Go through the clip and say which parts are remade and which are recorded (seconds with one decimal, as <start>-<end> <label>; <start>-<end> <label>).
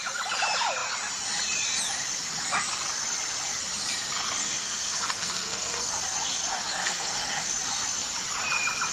0.0-4.4 recorded; 4.4-5.9 remade; 5.9-6.8 recorded; 6.8-7.5 remade; 7.5-8.9 recorded